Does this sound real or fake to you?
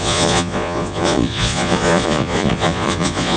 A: fake